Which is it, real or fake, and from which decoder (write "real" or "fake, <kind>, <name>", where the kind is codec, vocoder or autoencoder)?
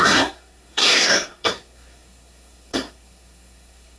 fake, codec, SNAC